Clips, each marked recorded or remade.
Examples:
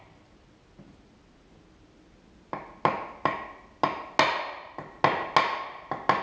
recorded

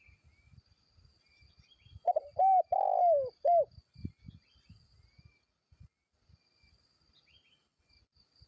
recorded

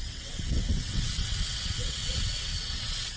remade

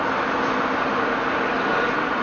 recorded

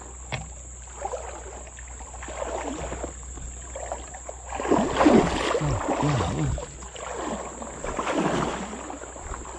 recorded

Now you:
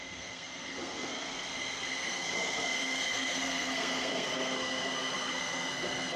remade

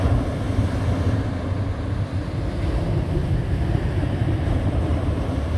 recorded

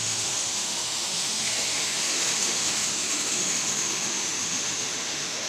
remade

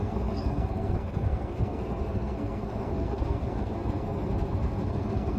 remade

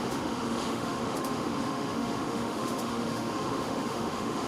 remade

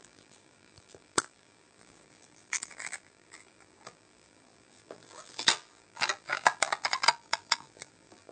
remade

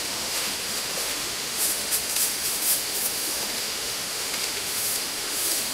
remade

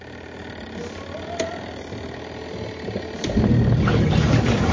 recorded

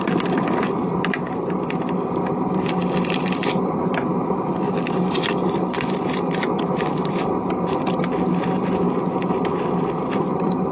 recorded